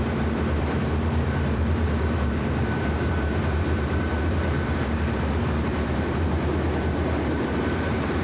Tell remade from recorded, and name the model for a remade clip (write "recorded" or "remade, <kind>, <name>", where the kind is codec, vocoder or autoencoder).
remade, vocoder, BigVGAN v2